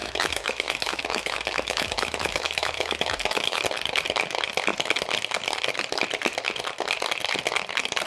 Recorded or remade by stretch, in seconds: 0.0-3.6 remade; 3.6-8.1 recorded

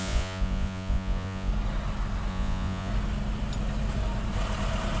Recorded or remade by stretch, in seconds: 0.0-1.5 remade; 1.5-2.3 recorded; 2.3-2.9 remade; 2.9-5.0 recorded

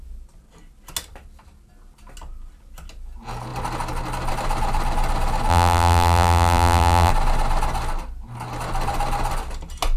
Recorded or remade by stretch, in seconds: 0.0-5.5 recorded; 5.5-7.1 remade; 7.1-10.0 recorded

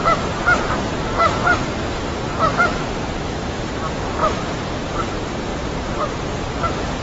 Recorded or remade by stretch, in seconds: 0.0-2.9 remade; 2.9-4.2 recorded; 4.2-5.0 remade; 5.0-5.5 recorded; 5.5-6.1 remade; 6.1-7.0 recorded